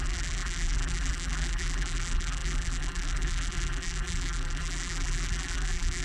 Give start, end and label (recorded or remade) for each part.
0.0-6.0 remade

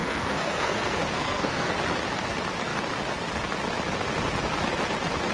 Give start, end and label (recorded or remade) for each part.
0.0-1.8 remade; 1.8-5.3 recorded

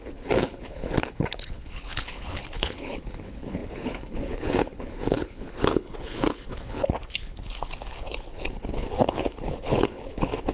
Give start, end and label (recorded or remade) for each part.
0.0-10.5 remade

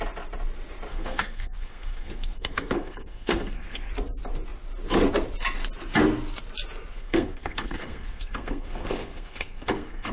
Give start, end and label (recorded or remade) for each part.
0.0-0.9 recorded; 0.9-3.9 remade; 3.9-6.9 recorded; 6.9-10.1 remade

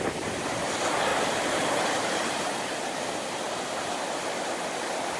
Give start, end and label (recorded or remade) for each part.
0.0-5.2 recorded

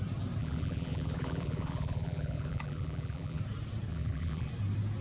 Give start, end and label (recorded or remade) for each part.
0.0-0.4 recorded; 0.4-3.4 remade; 3.4-3.9 recorded; 3.9-4.5 remade; 4.5-5.0 recorded

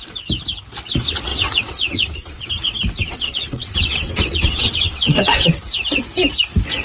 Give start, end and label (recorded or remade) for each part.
0.0-1.3 recorded; 1.3-2.5 remade; 2.5-3.0 recorded; 3.0-5.6 remade; 5.6-6.8 recorded

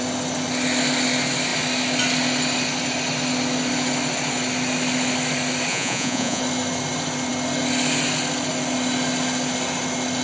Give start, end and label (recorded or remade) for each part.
0.0-5.7 recorded; 5.7-6.4 remade; 6.4-10.2 recorded